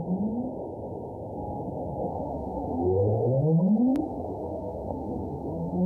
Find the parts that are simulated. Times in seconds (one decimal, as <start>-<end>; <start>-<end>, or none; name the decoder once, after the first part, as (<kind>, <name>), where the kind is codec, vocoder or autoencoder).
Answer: 2.1-5.9 (autoencoder, DAC-VAE)